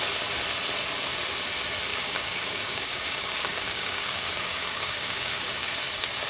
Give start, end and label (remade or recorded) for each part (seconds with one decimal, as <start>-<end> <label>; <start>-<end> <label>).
0.0-1.9 recorded; 1.9-5.7 remade; 5.7-6.3 recorded